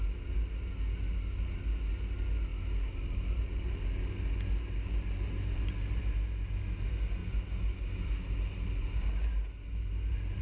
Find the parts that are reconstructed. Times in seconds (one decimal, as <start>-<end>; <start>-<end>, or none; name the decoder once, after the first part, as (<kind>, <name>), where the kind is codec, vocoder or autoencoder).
none